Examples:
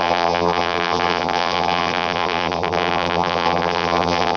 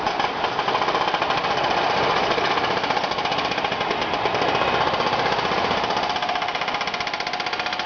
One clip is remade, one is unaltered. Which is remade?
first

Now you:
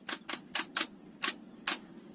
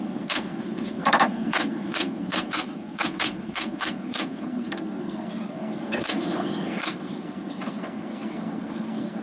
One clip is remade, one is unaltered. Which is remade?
second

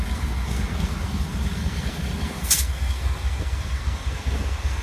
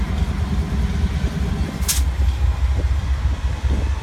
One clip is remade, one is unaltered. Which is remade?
first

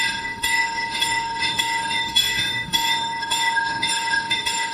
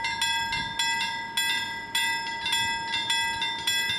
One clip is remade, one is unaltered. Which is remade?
first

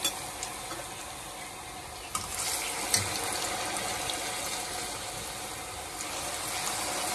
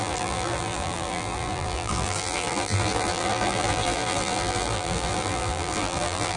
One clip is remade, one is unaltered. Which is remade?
second